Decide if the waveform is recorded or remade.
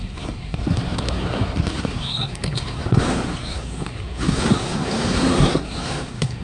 remade